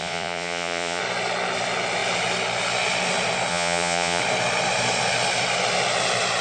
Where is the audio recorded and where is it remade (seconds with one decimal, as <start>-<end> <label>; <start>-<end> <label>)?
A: 0.0-1.0 remade; 1.0-3.5 recorded; 3.5-4.2 remade; 4.2-6.4 recorded